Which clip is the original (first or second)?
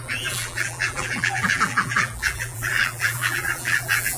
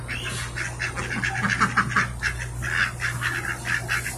second